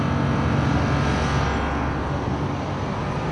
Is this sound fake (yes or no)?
no